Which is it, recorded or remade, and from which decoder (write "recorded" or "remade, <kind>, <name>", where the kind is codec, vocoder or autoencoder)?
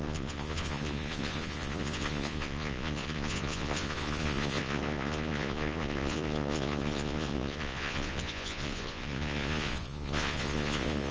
remade, vocoder, Vocos